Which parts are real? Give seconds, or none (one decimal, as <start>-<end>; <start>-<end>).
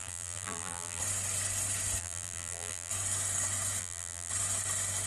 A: 1.0-2.0; 2.9-3.8; 4.3-5.1